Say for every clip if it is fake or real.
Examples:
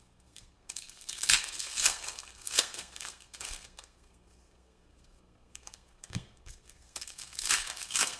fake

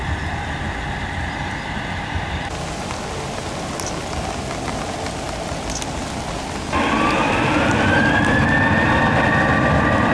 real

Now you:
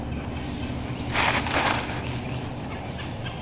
real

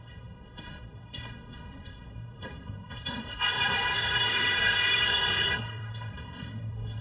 fake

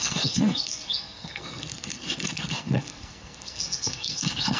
fake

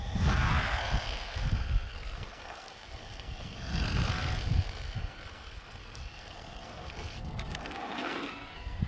fake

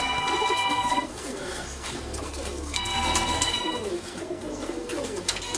fake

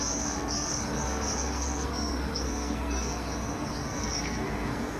fake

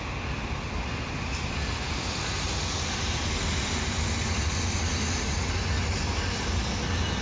real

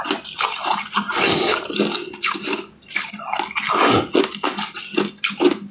real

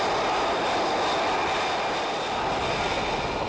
real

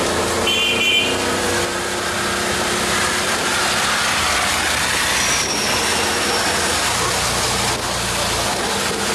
real